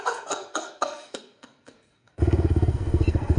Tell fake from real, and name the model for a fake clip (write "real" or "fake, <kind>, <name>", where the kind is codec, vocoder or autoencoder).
fake, codec, SNAC